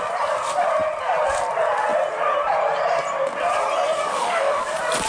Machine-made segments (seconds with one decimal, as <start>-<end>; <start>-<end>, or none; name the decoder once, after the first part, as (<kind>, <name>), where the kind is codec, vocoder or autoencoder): 4.1-4.6 (autoencoder, DAC-VAE)